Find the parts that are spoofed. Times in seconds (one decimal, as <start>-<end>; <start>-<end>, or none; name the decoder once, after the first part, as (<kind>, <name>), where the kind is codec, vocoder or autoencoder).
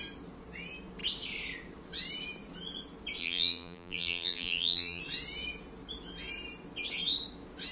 3.2-5.0 (vocoder, BigVGAN v2)